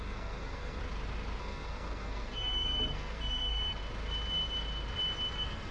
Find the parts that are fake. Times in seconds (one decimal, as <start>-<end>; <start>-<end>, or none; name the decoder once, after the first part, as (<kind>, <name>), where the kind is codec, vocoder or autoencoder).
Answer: 0.0-0.8 (codec, SNAC); 1.4-3.8; 5.3-5.7